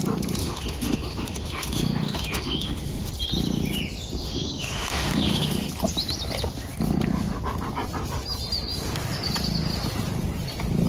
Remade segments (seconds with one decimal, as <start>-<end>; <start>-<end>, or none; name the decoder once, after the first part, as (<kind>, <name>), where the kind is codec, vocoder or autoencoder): 0.4-3.1 (autoencoder, DAC-VAE); 4.2-5.7